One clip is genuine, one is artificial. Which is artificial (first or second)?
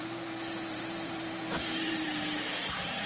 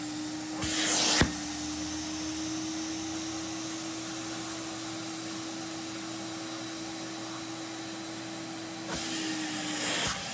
first